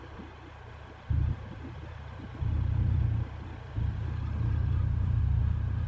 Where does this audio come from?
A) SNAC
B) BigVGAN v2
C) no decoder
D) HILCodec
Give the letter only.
C